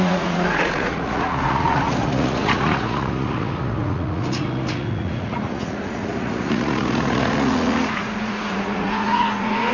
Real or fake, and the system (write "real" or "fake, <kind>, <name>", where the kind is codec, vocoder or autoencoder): fake, vocoder, Vocos